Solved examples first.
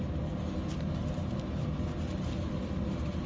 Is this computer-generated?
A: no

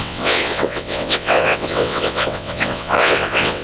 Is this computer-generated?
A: yes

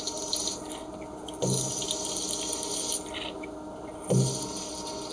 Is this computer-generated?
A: no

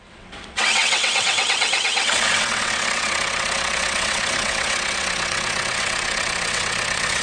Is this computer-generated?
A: yes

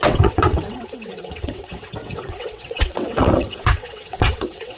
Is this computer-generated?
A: yes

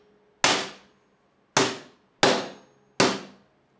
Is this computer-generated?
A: no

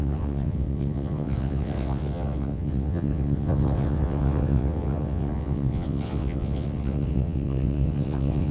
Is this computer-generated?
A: yes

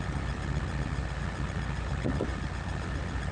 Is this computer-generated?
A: no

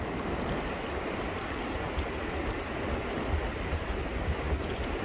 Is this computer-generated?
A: no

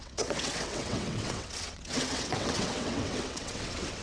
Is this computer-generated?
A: yes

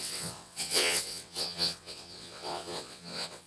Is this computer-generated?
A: yes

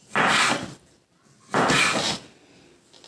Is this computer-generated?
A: no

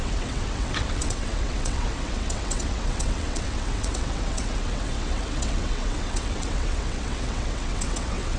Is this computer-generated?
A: yes